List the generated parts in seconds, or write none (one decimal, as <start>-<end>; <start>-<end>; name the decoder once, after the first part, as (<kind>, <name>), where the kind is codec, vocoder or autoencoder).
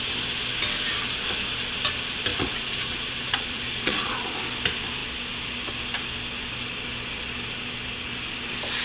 2.3-4.4 (vocoder, Vocos)